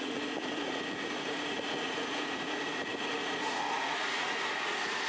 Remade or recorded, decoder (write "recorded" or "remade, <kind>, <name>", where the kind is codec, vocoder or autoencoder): remade, vocoder, Vocos